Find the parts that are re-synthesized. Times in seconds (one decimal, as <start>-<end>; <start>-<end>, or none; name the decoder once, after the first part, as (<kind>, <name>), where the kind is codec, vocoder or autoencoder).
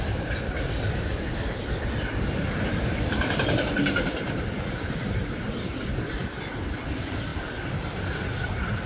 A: none